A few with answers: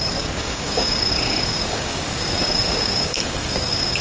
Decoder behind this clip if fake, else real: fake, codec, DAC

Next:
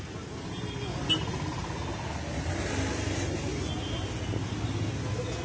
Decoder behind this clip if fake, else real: real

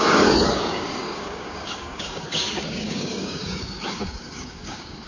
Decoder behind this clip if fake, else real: fake, codec, DAC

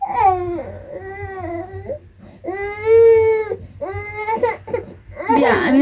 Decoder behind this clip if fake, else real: real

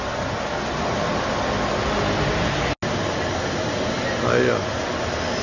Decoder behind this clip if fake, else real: real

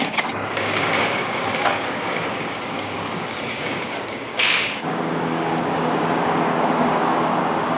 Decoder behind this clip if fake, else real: fake, codec, DAC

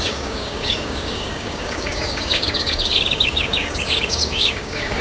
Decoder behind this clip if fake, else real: fake, codec, DAC